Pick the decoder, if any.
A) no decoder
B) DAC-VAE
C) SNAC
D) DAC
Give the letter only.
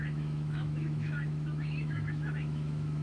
B